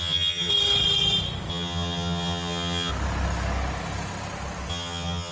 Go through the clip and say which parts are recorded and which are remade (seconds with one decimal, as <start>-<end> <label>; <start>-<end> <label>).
0.0-0.5 remade; 0.5-1.5 recorded; 1.5-2.9 remade; 2.9-4.7 recorded; 4.7-5.3 remade